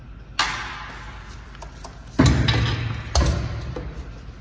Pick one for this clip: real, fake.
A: real